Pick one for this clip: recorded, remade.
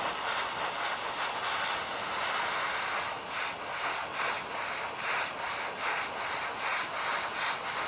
recorded